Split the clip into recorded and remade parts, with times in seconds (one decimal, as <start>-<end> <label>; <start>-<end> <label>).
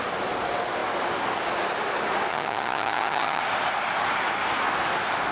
0.0-2.3 recorded; 2.3-3.4 remade; 3.4-5.3 recorded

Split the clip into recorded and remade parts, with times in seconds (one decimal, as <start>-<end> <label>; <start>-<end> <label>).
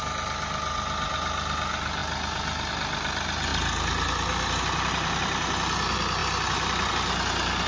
0.0-7.7 recorded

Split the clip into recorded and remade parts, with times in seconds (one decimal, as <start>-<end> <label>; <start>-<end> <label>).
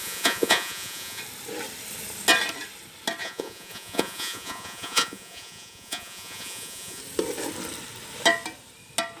0.0-1.2 remade; 1.2-3.2 recorded; 3.2-7.0 remade; 7.0-9.2 recorded